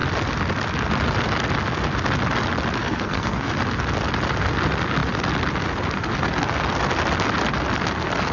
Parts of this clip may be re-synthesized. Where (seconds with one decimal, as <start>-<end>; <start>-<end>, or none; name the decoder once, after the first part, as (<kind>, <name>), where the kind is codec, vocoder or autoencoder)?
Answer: 2.8-3.5 (codec, SNAC)